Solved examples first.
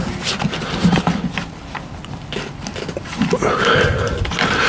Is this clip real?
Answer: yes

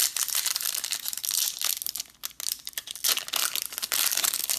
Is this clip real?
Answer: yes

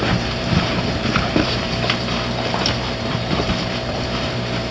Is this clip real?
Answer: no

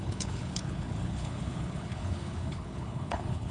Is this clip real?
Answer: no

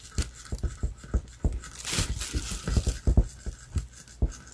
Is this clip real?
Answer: yes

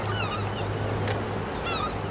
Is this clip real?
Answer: yes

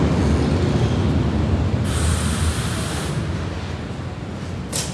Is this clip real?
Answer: yes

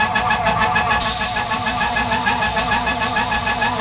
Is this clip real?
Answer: yes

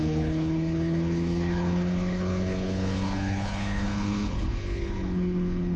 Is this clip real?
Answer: no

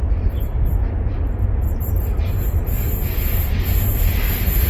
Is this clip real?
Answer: yes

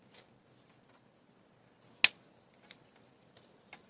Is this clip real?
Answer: yes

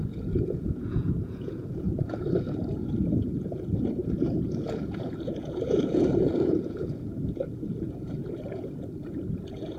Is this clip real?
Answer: no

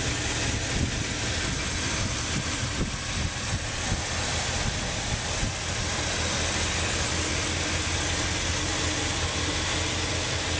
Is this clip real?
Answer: yes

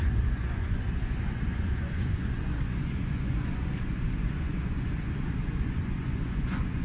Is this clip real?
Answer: no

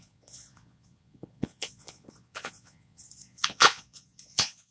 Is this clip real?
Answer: no